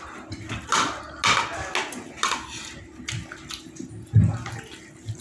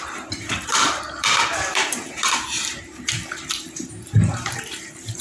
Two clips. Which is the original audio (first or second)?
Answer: first